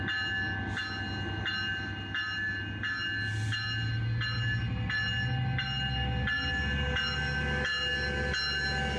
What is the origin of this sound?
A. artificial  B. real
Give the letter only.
B